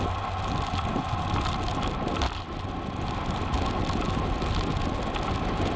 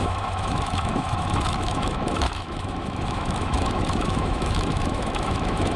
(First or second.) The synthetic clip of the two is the second